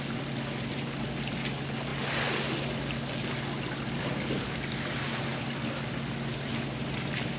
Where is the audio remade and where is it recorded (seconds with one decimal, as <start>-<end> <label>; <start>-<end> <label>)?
0.0-7.4 recorded